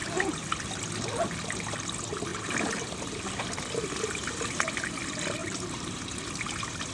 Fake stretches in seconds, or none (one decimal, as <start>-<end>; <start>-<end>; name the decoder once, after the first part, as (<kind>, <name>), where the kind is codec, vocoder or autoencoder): 0.0-0.5 (vocoder, BigVGAN v2); 2.3-3.4; 5.4-6.0

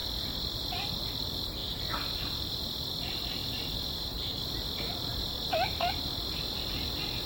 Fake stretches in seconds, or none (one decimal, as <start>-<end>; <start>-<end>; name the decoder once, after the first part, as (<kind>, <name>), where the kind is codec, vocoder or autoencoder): 0.0-1.0 (vocoder, BigVGAN v2); 1.6-2.9; 3.4-6.4

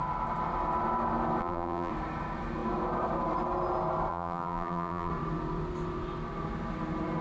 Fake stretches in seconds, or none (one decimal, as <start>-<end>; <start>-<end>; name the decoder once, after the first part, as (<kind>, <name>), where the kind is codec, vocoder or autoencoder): 1.4-1.9 (vocoder, BigVGAN v2); 4.1-5.1

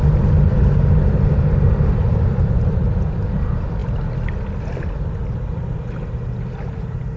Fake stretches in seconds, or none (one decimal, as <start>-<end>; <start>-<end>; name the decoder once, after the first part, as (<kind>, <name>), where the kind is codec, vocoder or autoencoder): 0.5-3.1 (vocoder, BigVGAN v2)

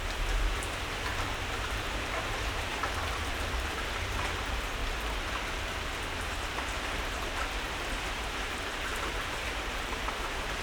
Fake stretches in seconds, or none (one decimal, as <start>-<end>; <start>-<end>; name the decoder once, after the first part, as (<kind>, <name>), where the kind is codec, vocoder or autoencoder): 0.0-4.8 (vocoder, BigVGAN v2); 7.9-10.6

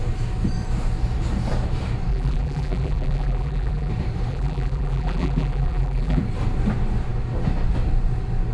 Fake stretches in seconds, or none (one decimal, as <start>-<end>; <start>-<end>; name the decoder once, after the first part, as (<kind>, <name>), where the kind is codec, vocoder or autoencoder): 2.1-3.9 (vocoder, BigVGAN v2); 4.3-6.2

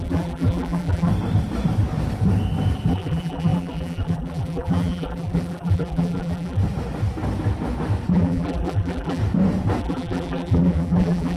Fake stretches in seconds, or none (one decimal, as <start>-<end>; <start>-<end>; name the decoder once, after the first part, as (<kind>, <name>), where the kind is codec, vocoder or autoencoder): 0.0-1.1 (vocoder, BigVGAN v2); 2.9-6.6; 8.1-9.2; 9.8-11.4

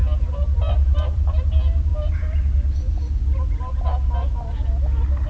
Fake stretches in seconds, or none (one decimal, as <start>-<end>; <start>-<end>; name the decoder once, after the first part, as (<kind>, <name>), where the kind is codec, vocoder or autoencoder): 0.0-1.5 (vocoder, BigVGAN v2)